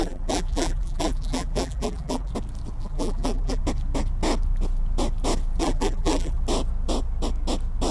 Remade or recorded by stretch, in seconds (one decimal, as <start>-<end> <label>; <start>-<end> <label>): 0.0-2.3 remade; 2.3-2.8 recorded; 2.8-3.6 remade; 3.6-5.6 recorded; 5.6-6.4 remade; 6.4-7.9 recorded